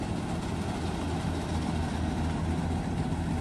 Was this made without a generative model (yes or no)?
yes